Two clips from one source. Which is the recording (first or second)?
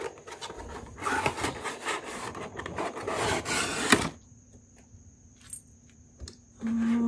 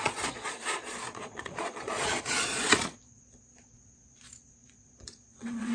first